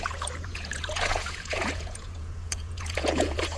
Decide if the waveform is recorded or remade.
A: remade